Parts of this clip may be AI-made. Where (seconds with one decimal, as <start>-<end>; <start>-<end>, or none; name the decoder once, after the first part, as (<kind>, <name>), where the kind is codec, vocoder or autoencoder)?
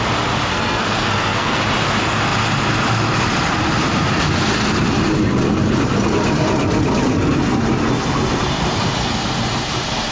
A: 0.5-1.6 (codec, SNAC)